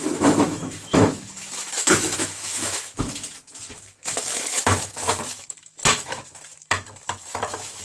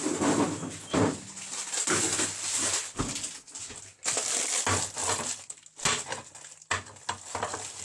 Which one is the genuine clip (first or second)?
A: second